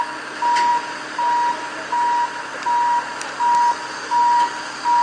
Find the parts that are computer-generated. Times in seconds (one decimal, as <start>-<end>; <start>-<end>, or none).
none